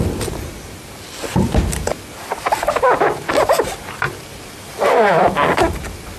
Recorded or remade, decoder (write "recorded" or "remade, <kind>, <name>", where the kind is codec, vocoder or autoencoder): recorded